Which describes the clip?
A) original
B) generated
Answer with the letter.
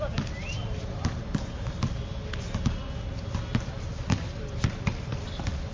A